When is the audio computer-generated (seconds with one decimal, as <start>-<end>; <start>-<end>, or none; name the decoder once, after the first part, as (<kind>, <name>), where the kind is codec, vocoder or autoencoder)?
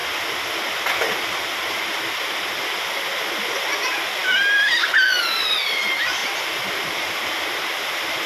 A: 6.2-7.1 (vocoder, BigVGAN v2)